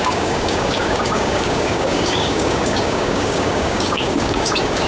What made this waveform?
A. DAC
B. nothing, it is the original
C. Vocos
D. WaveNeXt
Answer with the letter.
A